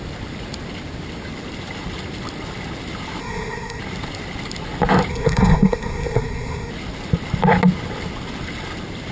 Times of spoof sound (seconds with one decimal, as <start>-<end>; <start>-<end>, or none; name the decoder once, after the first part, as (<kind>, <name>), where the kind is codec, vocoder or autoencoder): 3.2-3.8 (codec, SNAC); 5.1-6.7